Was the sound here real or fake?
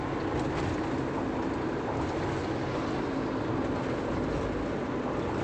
real